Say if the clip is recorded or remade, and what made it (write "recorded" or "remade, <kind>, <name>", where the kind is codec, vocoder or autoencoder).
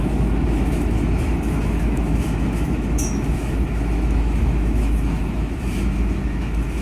remade, autoencoder, DAC-VAE